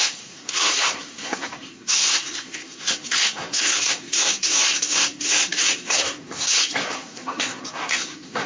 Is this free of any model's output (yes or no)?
no